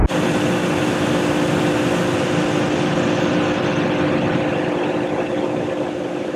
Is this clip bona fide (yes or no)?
yes